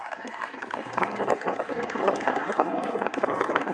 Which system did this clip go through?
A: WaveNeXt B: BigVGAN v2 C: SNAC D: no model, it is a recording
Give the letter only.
C